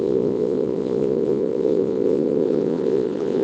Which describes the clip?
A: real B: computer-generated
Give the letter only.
B